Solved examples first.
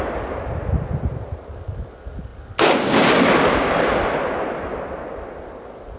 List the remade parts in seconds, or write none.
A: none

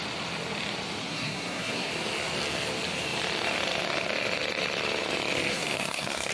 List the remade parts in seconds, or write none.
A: 1.0-1.9 (codec, SNAC); 5.5-6.3

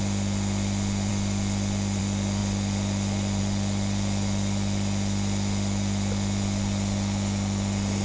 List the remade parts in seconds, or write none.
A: none

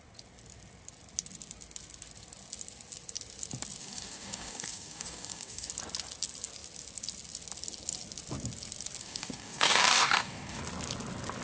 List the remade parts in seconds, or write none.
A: 3.8-5.7 (codec, DAC); 9.0-10.6

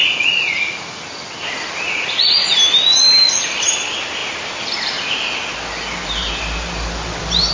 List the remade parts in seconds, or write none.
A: 3.4-7.5 (vocoder, BigVGAN v2)

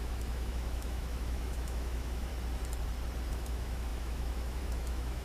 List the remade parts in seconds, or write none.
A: 0.0-2.3 (autoencoder, DAC-VAE); 3.3-5.2

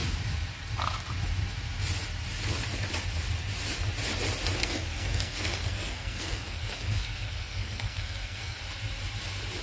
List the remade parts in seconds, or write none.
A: 4.6-8.6 (codec, SNAC)

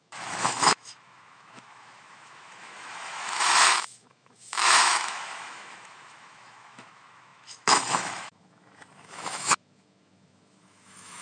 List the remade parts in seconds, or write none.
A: 0.0-11.2 (autoencoder, DAC-VAE)